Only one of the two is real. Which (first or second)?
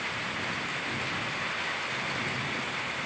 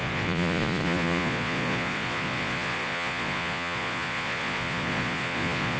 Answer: first